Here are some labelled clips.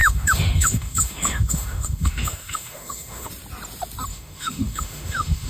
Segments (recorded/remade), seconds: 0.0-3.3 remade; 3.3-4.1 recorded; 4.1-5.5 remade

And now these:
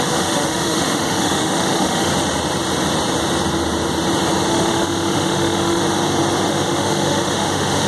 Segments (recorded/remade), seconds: 0.0-2.1 remade; 2.1-4.5 recorded; 4.5-5.8 remade; 5.8-6.5 recorded; 6.5-7.9 remade

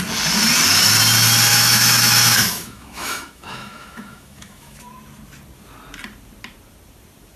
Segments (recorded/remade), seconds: 0.0-1.5 recorded; 1.5-4.8 remade; 4.8-7.4 recorded

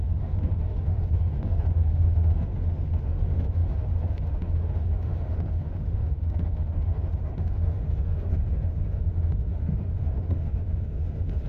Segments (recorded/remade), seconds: 0.0-11.5 remade

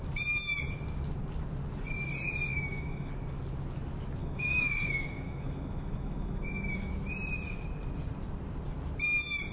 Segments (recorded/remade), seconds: 0.0-2.5 recorded; 2.5-3.1 remade; 3.1-4.2 recorded; 4.2-6.9 remade; 6.9-9.5 recorded

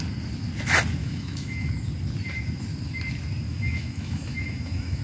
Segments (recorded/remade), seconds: 0.0-1.0 recorded; 1.0-1.7 remade; 1.7-3.5 recorded; 3.5-5.0 remade

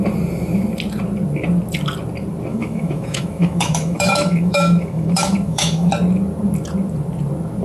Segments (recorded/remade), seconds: 0.0-2.5 recorded; 2.5-5.9 remade; 5.9-7.6 recorded

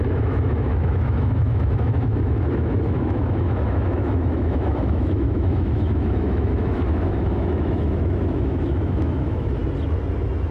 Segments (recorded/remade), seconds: 0.0-9.6 remade; 9.6-10.5 recorded